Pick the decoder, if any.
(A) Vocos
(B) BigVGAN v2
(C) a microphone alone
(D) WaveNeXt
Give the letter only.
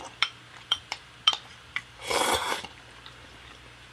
B